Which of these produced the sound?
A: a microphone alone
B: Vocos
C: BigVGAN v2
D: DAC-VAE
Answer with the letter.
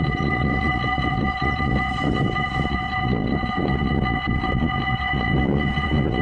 B